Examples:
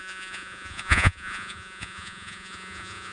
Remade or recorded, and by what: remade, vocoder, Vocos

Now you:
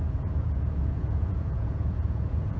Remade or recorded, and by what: remade, vocoder, Vocos